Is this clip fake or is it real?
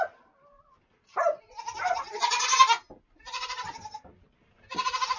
real